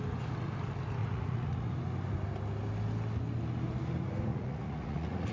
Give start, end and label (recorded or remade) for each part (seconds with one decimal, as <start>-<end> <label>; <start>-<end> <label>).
0.0-1.0 recorded; 1.0-1.7 remade; 1.7-4.3 recorded; 4.3-5.3 remade